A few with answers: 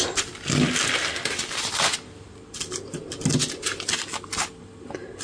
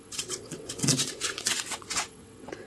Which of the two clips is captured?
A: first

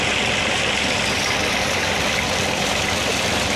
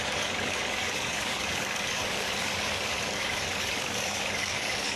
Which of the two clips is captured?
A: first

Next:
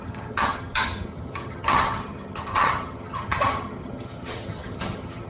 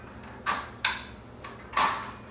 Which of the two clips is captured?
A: second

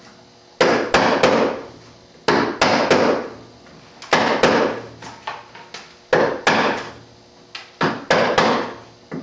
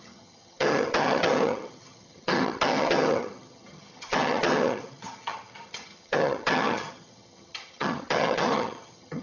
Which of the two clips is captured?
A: first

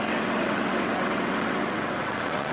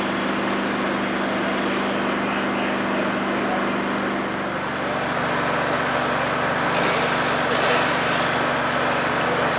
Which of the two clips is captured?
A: second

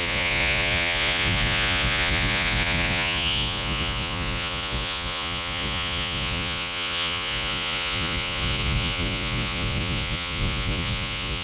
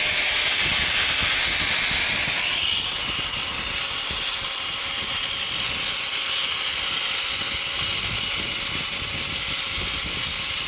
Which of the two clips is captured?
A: second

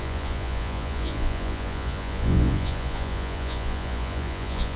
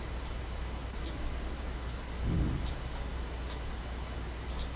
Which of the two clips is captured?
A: second